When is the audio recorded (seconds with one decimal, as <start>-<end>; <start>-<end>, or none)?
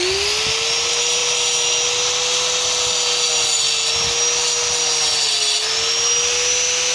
0.0-6.9